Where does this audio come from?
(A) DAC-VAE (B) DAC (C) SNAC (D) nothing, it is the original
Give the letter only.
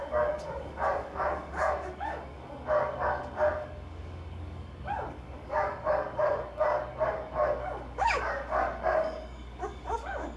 B